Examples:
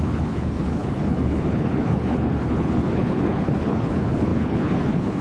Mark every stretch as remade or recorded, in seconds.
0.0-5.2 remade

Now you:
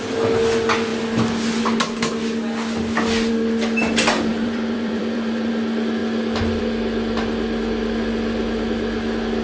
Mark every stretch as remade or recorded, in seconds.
0.0-4.3 recorded; 4.3-5.5 remade; 5.5-9.4 recorded

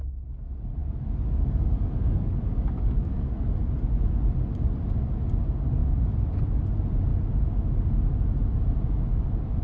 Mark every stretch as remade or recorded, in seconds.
0.0-0.8 recorded; 0.8-3.6 remade; 3.6-9.6 recorded

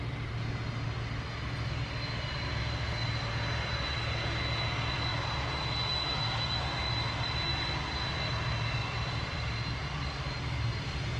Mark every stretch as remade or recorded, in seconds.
0.0-8.8 recorded; 8.8-9.4 remade; 9.4-9.8 recorded; 9.8-11.2 remade

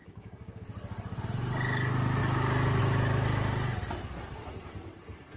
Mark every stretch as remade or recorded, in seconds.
0.0-0.6 remade; 0.6-5.4 recorded

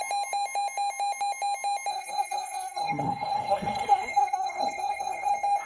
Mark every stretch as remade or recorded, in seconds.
0.0-1.9 recorded; 1.9-5.3 remade; 5.3-5.7 recorded

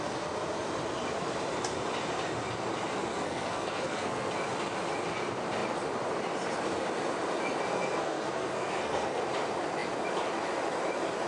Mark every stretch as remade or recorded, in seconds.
0.0-3.1 recorded; 3.1-4.3 remade; 4.3-7.7 recorded; 7.7-9.2 remade; 9.2-11.3 recorded

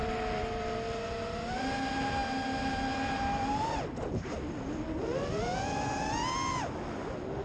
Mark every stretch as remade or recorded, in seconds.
0.0-7.4 recorded